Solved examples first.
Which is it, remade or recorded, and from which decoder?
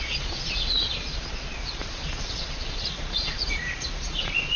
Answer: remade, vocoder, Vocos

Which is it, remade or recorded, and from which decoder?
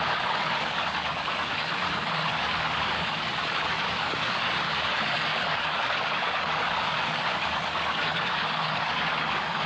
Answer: remade, codec, DAC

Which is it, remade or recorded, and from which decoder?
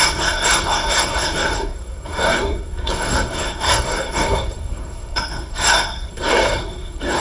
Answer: remade, codec, SNAC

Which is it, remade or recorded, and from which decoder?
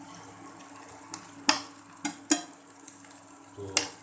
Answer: recorded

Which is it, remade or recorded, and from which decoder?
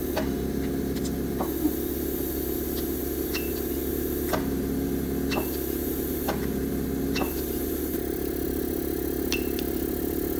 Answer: recorded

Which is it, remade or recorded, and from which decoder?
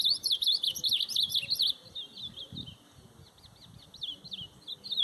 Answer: recorded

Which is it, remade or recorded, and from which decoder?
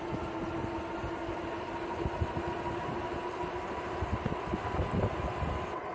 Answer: recorded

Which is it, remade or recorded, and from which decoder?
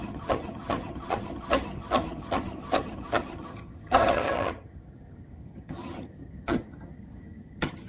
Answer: remade, vocoder, HiFi-GAN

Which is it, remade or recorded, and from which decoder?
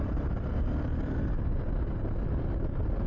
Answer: recorded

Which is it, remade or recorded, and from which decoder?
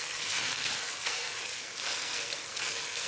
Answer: remade, codec, SNAC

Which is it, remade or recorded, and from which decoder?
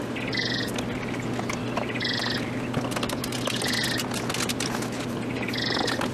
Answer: recorded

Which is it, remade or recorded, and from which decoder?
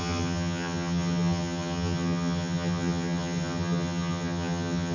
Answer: remade, vocoder, HiFi-GAN